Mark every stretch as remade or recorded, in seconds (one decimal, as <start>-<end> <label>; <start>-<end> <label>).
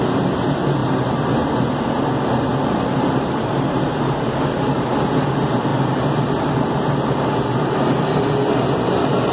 0.0-9.3 recorded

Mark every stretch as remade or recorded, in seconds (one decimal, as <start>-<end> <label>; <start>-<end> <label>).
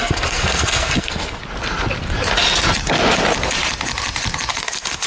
0.0-1.4 remade; 1.4-4.5 recorded; 4.5-5.1 remade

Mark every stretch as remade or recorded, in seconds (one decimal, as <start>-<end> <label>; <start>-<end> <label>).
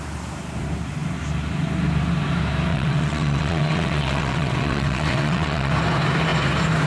0.0-2.7 recorded; 2.7-5.7 remade; 5.7-6.9 recorded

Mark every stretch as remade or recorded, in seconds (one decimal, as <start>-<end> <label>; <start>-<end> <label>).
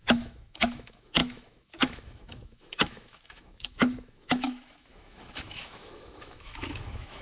0.0-7.2 remade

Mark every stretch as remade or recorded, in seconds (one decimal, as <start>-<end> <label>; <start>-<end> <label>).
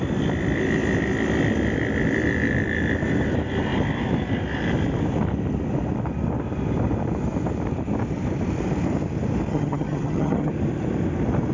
0.0-9.5 recorded; 9.5-10.5 remade; 10.5-11.5 recorded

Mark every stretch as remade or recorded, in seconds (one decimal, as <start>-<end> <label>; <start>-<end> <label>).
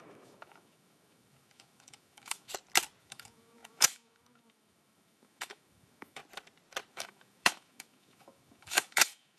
0.0-2.5 remade; 2.5-3.0 recorded; 3.0-6.2 remade; 6.2-6.9 recorded; 6.9-9.4 remade